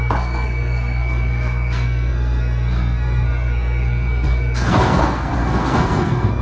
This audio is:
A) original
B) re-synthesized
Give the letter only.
B